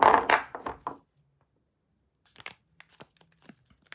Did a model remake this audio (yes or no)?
no